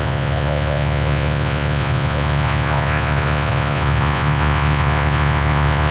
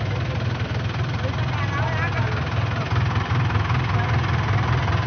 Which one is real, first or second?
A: second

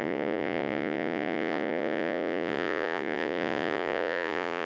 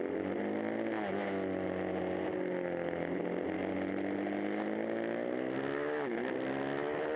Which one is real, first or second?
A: second